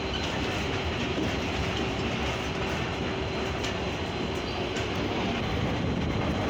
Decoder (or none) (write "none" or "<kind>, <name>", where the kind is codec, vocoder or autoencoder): none